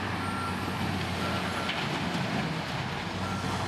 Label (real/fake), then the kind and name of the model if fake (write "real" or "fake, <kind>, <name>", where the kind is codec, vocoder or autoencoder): real